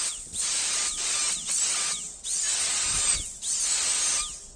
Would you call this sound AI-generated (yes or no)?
no